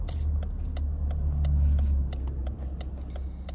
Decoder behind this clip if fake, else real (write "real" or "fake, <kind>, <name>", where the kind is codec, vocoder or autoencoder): real